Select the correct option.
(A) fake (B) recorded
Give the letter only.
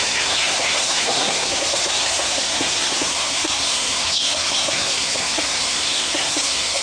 A